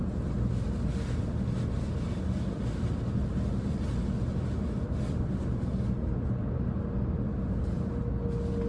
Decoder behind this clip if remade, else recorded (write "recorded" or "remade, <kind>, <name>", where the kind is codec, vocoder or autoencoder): recorded